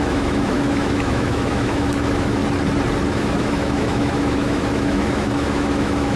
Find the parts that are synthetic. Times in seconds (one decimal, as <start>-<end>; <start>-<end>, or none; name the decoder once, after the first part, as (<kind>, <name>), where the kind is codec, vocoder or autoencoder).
0.0-2.4 (autoencoder, DAC-VAE); 3.1-6.2